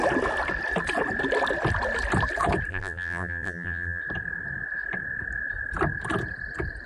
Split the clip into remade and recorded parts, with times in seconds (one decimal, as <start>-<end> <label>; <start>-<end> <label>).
0.0-2.7 recorded; 2.7-4.0 remade; 4.0-6.9 recorded